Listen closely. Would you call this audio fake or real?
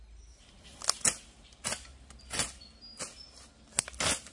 real